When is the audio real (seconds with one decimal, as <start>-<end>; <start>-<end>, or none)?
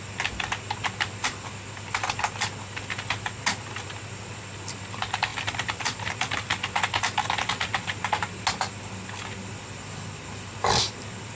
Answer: 0.0-5.3; 6.1-11.3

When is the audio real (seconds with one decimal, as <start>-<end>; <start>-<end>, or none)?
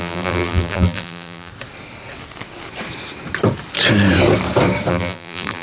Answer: 1.5-4.9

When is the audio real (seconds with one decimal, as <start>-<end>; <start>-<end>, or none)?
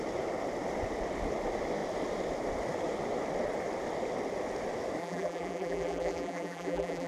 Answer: 0.0-5.0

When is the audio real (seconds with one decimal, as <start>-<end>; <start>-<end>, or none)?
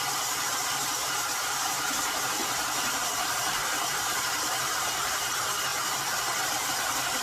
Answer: 0.0-1.0; 5.3-7.2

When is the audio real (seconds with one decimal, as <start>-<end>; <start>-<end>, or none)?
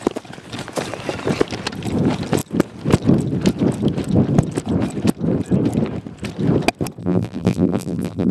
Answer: 0.0-7.0